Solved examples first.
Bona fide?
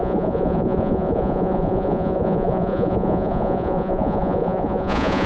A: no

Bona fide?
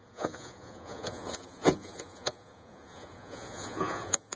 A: no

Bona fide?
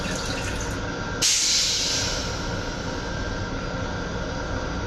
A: yes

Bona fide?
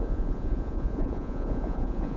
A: no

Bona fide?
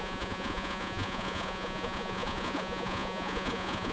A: no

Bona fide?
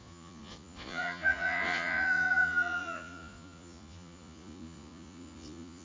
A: no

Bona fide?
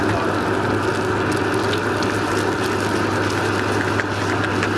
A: yes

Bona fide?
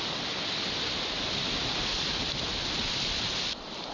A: yes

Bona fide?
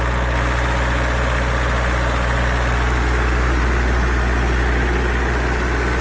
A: yes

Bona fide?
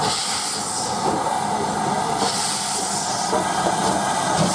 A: yes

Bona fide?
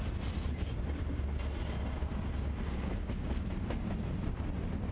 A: yes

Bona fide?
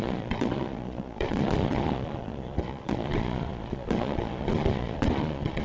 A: no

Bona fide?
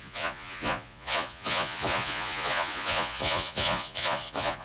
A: no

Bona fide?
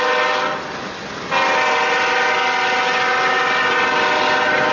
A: yes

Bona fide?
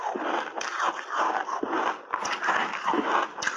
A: yes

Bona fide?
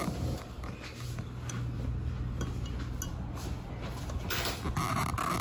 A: yes